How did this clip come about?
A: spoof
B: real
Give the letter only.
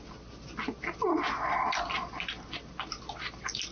B